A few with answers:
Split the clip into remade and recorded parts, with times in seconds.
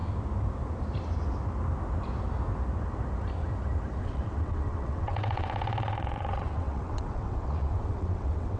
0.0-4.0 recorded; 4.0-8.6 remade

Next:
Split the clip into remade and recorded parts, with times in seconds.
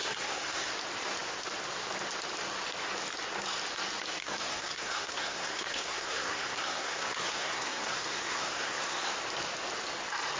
0.0-0.7 remade; 0.7-4.2 recorded; 4.2-9.1 remade; 9.1-10.4 recorded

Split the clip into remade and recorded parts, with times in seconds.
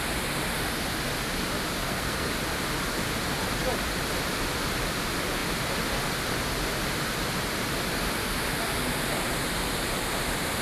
0.0-1.8 recorded; 1.8-2.3 remade; 2.3-10.6 recorded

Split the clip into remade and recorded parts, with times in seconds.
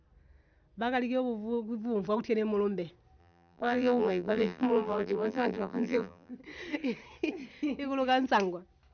0.0-3.2 recorded; 3.2-6.3 remade; 6.3-8.9 recorded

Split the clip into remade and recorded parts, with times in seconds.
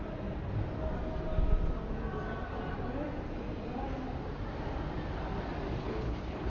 0.0-5.8 recorded; 5.8-6.5 remade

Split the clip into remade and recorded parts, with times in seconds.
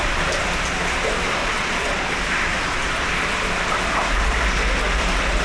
0.0-1.4 recorded; 1.4-2.1 remade; 2.1-5.4 recorded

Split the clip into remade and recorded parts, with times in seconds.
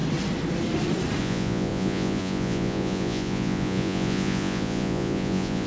0.0-1.2 recorded; 1.2-5.7 remade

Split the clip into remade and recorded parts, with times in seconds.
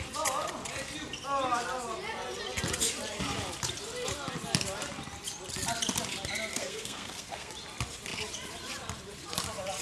0.0-6.5 recorded; 6.5-7.5 remade; 7.5-9.8 recorded